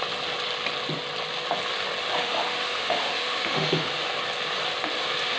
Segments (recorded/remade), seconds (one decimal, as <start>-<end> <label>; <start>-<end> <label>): 0.0-2.2 recorded; 2.2-3.9 remade; 3.9-5.4 recorded